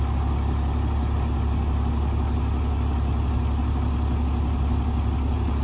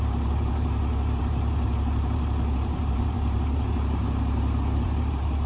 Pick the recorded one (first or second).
first